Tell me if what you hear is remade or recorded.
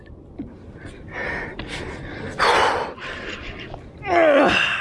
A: recorded